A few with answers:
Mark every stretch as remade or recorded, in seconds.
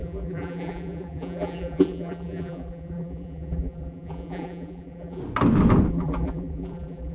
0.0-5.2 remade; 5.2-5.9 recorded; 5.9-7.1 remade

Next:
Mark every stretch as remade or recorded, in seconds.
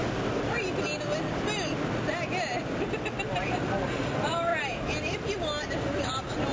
0.0-3.5 recorded; 3.5-4.5 remade; 4.5-5.7 recorded; 5.7-6.5 remade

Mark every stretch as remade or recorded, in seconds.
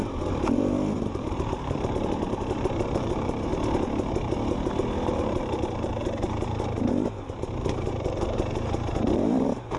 0.0-3.5 remade; 3.5-5.1 recorded; 5.1-9.8 remade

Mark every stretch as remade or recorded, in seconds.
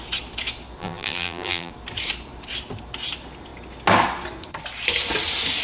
0.0-0.8 recorded; 0.8-1.7 remade; 1.7-5.6 recorded